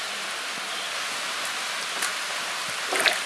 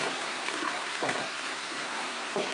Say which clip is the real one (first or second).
first